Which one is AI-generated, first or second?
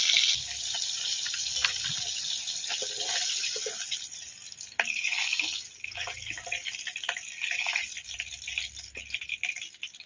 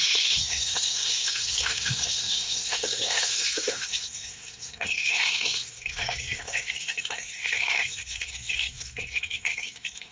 second